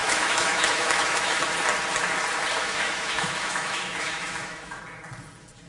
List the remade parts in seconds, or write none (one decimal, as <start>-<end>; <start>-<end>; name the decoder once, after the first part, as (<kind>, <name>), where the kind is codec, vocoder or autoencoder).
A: 0.0-1.4 (autoencoder, DAC-VAE); 2.6-4.8

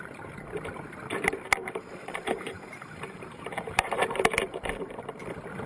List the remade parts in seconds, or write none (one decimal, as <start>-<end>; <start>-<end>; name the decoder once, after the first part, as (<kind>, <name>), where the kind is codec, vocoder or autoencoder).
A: 1.6-5.0 (vocoder, BigVGAN v2)

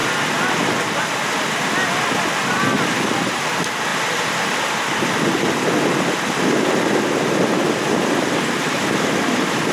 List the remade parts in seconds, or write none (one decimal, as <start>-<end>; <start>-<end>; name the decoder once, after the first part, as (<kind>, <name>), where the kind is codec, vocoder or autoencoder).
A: none

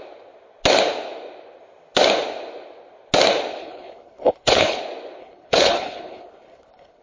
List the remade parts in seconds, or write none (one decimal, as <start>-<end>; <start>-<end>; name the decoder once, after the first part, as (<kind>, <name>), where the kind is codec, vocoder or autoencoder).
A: 3.6-4.8 (codec, HILCodec); 5.2-7.0

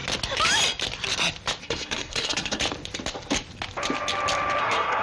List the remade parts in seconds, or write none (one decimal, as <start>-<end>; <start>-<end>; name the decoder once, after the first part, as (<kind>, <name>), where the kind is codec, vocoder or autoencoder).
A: 1.6-2.6 (codec, SNAC); 4.6-5.0